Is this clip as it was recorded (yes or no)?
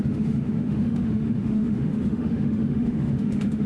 no